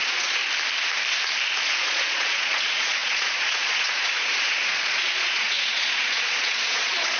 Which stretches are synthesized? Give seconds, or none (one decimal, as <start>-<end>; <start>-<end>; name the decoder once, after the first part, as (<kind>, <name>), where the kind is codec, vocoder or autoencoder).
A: 0.0-0.4 (vocoder, Vocos); 1.6-7.2